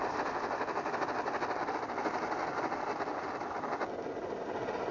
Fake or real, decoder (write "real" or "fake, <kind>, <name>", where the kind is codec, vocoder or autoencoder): real